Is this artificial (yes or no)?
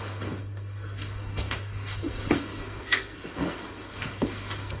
yes